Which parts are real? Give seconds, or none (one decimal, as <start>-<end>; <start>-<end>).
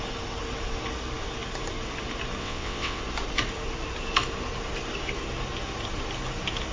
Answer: 0.0-2.4; 3.0-6.7